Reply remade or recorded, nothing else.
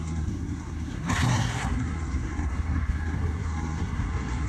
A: remade